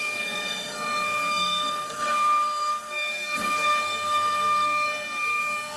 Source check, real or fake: fake